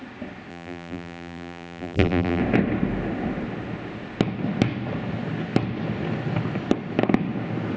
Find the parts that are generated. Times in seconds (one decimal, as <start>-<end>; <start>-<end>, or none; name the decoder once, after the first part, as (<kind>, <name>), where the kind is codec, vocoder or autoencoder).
0.5-2.4 (vocoder, BigVGAN v2)